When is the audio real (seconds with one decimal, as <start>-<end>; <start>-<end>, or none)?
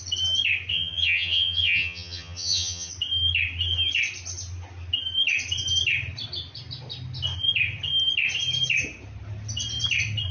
0.0-0.7; 2.9-10.3